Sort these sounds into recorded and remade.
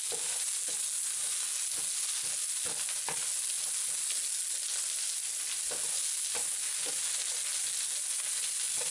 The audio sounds recorded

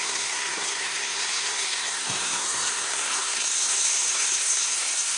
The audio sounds remade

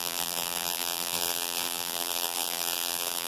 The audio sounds remade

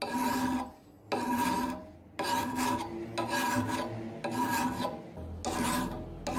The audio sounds recorded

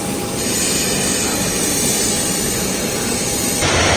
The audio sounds recorded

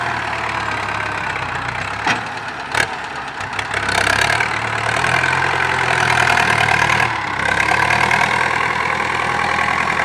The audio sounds recorded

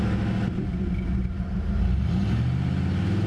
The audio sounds recorded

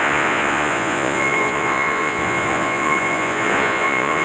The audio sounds remade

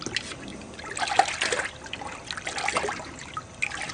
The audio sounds recorded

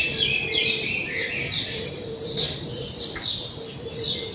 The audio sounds remade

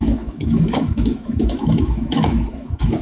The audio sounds remade